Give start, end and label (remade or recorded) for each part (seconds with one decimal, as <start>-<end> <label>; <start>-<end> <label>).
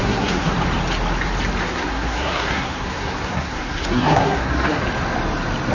0.0-0.5 remade; 0.5-1.6 recorded; 1.6-4.8 remade; 4.8-5.7 recorded